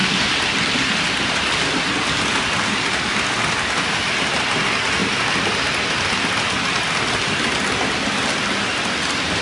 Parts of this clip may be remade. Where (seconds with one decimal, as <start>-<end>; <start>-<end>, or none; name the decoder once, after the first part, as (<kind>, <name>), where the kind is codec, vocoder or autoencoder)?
none